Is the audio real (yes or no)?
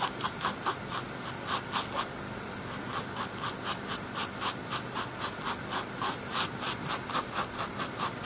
yes